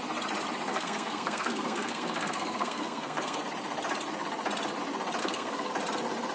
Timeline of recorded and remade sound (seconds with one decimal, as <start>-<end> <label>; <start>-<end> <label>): 0.0-0.7 recorded; 0.7-3.4 remade; 3.4-5.2 recorded; 5.2-5.7 remade; 5.7-6.3 recorded